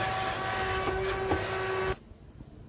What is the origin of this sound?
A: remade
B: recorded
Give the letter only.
B